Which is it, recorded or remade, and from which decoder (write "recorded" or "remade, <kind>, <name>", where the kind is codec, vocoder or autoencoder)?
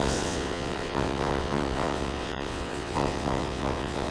remade, vocoder, WaveNeXt